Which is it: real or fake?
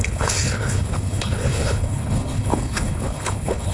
fake